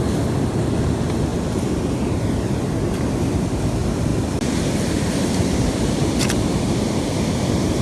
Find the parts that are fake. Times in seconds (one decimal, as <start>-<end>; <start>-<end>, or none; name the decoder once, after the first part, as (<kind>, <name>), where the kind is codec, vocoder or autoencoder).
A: 1.3-2.2 (vocoder, BigVGAN v2); 4.1-6.8